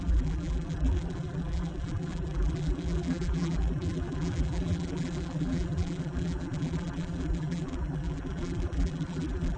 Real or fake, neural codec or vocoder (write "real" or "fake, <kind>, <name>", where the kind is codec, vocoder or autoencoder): fake, vocoder, BigVGAN v2